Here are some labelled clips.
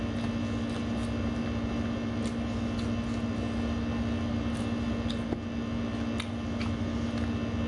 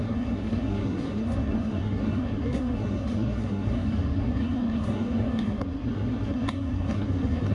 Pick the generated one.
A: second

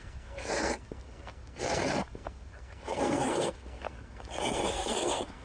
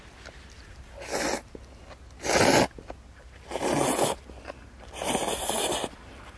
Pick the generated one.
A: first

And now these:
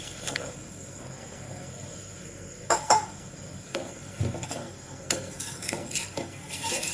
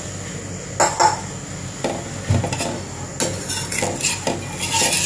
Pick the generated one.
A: first